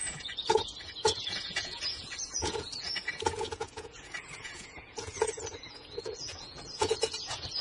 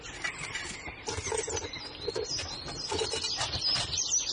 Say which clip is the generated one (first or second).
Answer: first